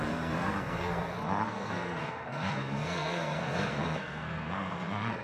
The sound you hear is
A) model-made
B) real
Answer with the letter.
A